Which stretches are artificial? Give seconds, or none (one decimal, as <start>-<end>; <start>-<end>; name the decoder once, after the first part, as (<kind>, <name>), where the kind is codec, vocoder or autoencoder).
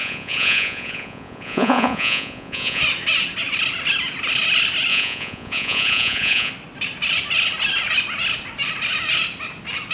0.0-2.8 (vocoder, Vocos); 4.9-6.5